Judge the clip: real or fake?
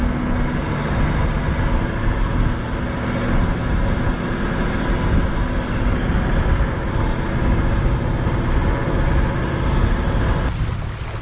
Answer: real